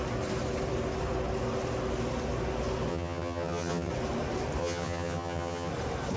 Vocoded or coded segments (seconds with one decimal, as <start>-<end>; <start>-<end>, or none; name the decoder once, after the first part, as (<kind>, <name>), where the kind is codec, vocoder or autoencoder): 2.9-3.9 (vocoder, HiFi-GAN); 4.6-5.7